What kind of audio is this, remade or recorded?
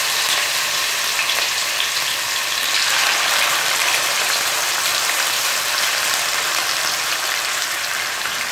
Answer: remade